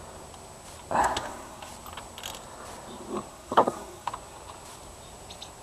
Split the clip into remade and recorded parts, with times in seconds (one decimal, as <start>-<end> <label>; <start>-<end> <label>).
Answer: 0.0-1.0 recorded; 1.0-1.7 remade; 1.7-3.3 recorded; 3.3-4.1 remade; 4.1-5.6 recorded